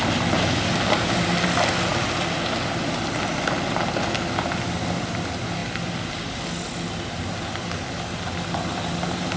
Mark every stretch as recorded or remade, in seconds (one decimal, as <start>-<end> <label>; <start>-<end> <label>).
0.0-9.4 recorded